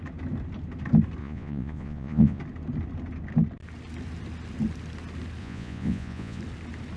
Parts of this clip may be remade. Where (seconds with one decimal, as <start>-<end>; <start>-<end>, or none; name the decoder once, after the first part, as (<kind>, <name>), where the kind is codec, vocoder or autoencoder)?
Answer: 1.2-2.4 (vocoder, Vocos); 5.4-6.4